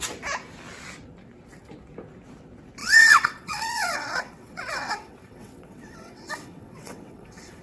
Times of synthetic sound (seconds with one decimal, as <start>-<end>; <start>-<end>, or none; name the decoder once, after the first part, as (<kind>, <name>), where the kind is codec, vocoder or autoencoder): 2.8-7.6 (vocoder, WaveNeXt)